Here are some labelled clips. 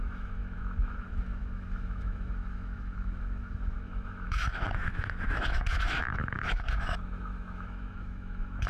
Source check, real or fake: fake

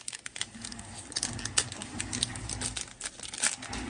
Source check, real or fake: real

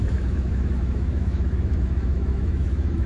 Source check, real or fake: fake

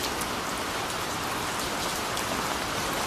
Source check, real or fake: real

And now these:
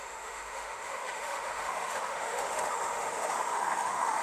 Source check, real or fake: fake